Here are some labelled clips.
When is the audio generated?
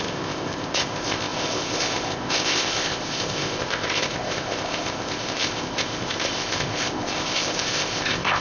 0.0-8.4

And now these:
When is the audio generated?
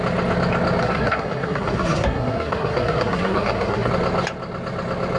0.8-3.9